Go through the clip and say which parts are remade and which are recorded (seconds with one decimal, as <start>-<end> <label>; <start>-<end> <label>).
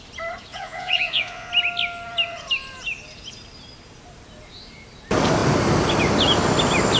0.0-0.5 recorded; 0.5-1.5 remade; 1.5-7.0 recorded